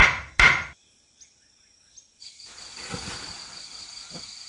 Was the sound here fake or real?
real